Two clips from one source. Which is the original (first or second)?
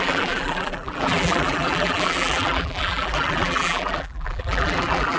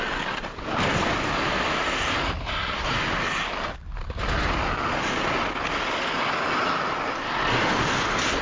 second